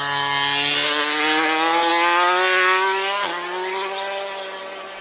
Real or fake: real